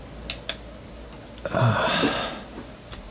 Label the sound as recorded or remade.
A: recorded